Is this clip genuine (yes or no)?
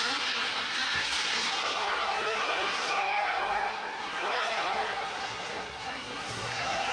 no